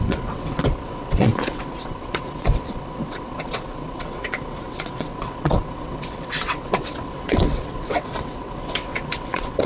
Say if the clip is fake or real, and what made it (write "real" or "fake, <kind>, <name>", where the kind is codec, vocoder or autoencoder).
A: fake, vocoder, WaveNeXt